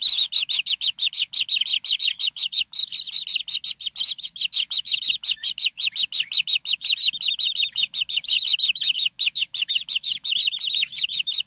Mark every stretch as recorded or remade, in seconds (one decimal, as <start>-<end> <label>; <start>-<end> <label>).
0.0-2.8 remade; 2.8-4.0 recorded; 4.0-11.5 remade